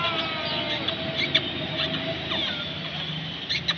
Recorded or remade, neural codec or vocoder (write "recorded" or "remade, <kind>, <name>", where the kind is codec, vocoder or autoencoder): recorded